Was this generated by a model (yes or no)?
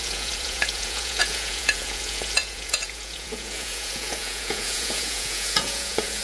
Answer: yes